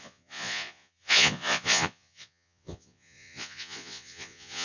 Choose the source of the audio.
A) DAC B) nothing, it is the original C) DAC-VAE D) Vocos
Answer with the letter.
D